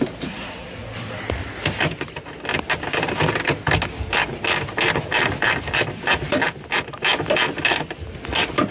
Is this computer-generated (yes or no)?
no